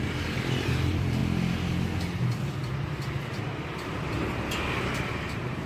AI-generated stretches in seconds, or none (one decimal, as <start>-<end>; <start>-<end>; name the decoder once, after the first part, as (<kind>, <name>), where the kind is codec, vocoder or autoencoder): 0.0-1.2 (vocoder, BigVGAN v2); 4.6-5.7